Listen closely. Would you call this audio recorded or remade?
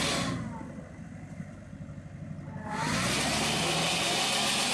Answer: recorded